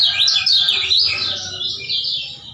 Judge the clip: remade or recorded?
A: recorded